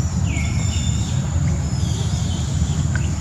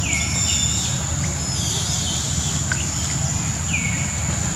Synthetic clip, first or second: first